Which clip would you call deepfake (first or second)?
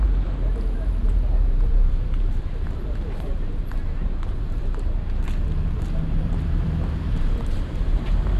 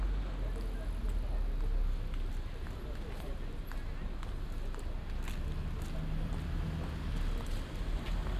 first